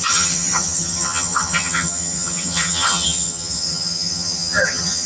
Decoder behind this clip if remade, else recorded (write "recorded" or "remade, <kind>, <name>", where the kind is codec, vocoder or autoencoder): remade, vocoder, HiFi-GAN